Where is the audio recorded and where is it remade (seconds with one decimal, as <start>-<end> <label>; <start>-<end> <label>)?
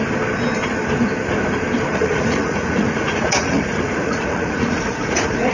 0.0-1.9 recorded; 1.9-5.5 remade